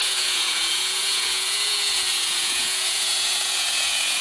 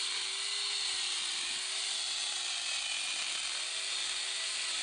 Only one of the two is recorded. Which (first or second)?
second